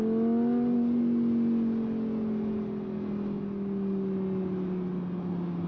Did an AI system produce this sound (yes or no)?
no